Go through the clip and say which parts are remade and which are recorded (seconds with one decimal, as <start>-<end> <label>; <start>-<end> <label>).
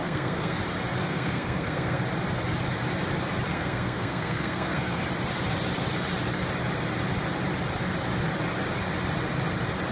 0.0-0.6 remade; 0.6-1.0 recorded; 1.0-2.0 remade; 2.0-3.5 recorded; 3.5-5.0 remade; 5.0-9.9 recorded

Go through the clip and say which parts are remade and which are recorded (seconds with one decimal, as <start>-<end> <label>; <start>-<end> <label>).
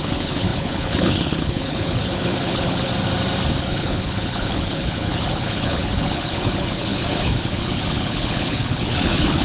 0.0-2.9 remade; 2.9-3.6 recorded; 3.6-9.4 remade